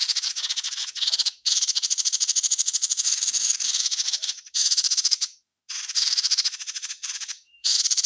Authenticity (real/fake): fake